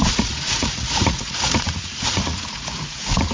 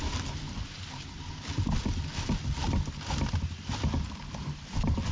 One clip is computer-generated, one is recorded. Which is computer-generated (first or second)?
first